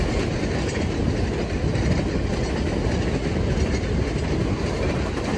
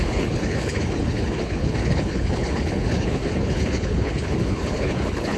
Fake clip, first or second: second